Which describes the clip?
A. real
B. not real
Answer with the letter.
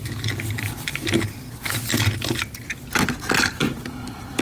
A